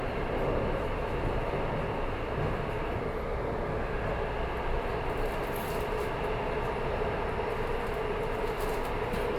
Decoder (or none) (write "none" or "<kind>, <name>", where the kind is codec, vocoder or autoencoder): none